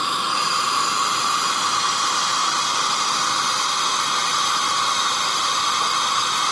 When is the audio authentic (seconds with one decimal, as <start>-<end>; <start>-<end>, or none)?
2.4-3.8